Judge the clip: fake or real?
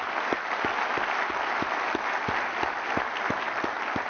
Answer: real